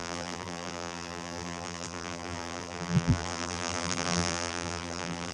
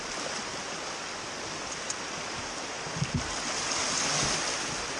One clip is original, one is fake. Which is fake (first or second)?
first